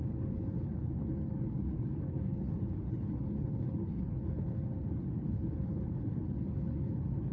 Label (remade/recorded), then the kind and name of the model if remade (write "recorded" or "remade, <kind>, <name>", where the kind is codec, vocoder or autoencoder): remade, codec, HILCodec